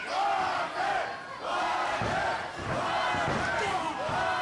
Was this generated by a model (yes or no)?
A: no